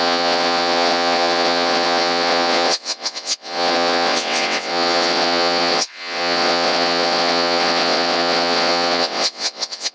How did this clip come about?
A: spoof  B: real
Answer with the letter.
A